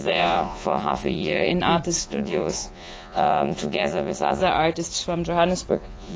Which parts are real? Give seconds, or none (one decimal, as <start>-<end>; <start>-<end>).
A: 1.5-2.0; 4.4-5.7